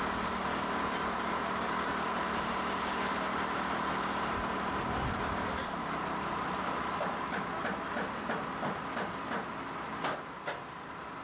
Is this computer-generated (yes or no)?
no